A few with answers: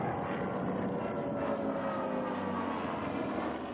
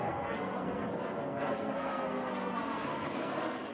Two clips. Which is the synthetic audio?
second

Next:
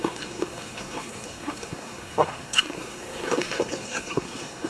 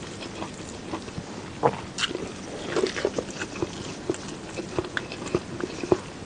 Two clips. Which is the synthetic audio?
first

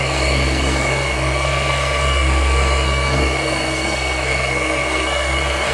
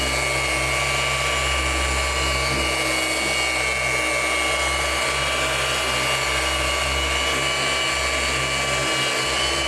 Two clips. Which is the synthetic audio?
first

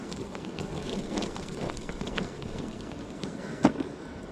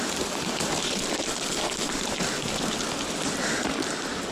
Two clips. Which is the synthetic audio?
first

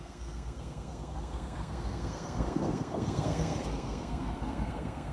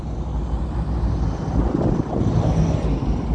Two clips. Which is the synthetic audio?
first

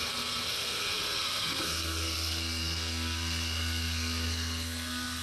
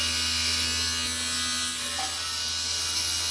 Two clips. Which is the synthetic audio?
first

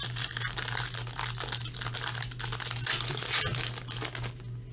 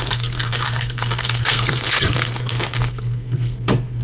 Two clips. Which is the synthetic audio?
second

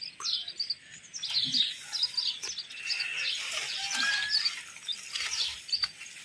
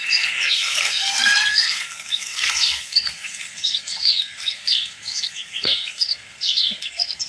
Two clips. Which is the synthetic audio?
second